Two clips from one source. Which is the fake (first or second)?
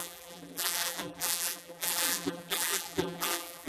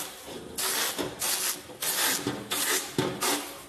first